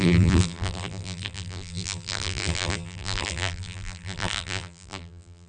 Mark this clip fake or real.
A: fake